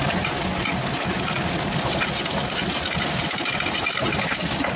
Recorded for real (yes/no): yes